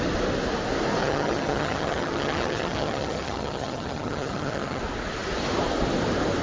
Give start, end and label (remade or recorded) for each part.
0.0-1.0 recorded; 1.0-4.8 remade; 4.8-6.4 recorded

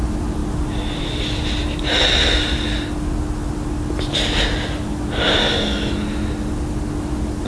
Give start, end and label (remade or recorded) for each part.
0.0-7.5 recorded